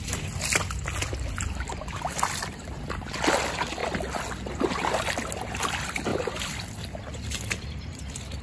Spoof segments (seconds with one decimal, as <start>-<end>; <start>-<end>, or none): none